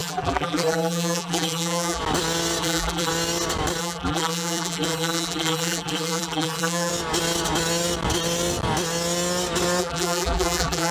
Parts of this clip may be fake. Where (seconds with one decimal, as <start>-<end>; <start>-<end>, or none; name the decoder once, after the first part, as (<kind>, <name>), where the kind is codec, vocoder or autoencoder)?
0.0-2.0 (vocoder, BigVGAN v2); 2.6-3.1; 3.8-6.9; 9.8-10.9